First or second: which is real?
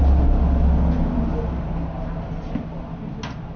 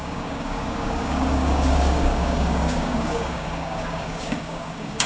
first